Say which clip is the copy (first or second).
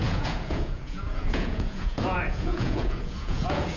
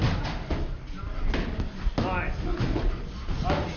first